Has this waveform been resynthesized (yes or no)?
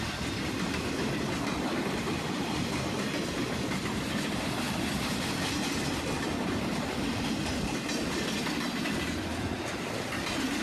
no